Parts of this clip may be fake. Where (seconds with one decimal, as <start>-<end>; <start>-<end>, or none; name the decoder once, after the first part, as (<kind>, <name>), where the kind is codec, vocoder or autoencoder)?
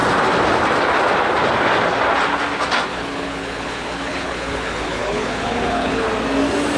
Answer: 2.9-6.1 (codec, HILCodec)